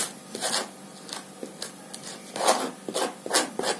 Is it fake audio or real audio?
real